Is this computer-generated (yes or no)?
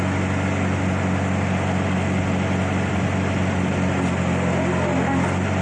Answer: no